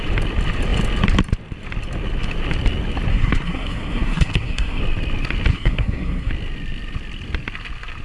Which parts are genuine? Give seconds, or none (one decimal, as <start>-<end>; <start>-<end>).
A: 0.0-3.1; 4.8-5.5; 6.3-8.0

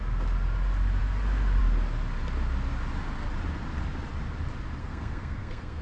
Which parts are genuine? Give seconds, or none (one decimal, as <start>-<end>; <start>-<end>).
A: 0.0-4.8

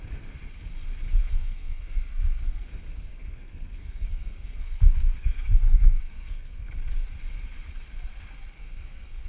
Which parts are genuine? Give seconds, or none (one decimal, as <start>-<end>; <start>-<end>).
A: 0.0-1.2; 2.7-3.1; 6.7-8.6